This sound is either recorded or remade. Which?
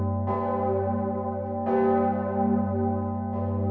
recorded